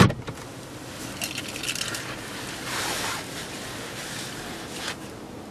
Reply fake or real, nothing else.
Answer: real